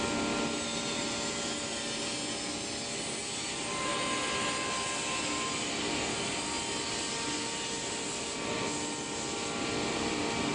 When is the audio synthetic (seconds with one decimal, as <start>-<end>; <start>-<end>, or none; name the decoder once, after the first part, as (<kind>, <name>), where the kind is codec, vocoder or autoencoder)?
none